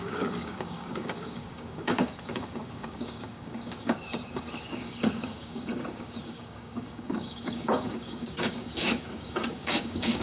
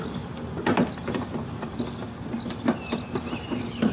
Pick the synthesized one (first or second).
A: first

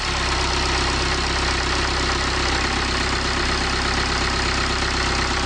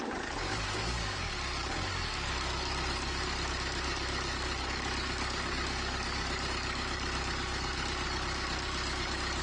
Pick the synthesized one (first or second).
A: second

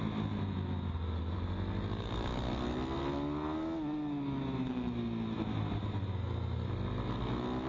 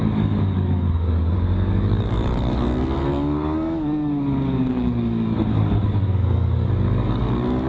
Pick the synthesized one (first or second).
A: second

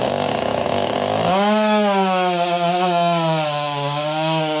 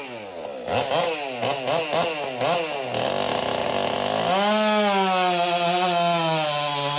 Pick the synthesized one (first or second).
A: first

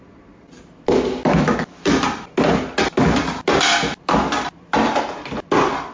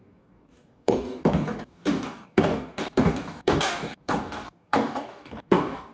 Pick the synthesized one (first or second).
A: second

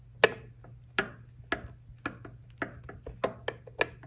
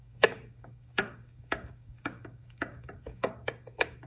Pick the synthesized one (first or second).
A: second